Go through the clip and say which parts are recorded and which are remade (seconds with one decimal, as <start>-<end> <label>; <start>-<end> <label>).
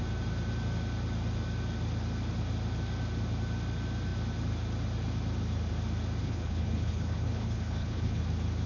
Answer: 0.0-6.2 recorded; 6.2-8.2 remade; 8.2-8.7 recorded